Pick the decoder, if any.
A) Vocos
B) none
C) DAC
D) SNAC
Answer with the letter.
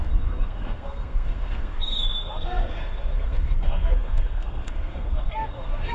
D